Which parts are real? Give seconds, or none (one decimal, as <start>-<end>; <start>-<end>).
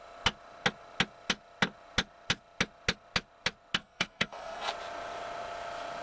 0.0-3.8; 4.7-6.0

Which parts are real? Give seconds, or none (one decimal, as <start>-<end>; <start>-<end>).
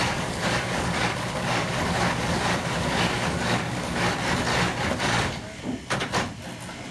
4.1-4.5; 5.6-6.9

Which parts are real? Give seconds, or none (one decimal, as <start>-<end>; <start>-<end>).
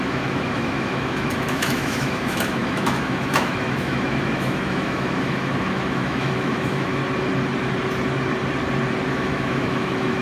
7.0-9.1